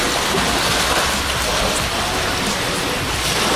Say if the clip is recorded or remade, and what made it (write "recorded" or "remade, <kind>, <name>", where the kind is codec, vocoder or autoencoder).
recorded